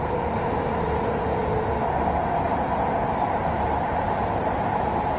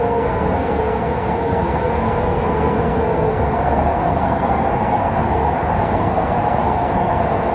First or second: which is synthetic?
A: second